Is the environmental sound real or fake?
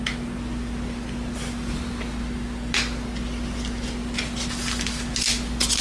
real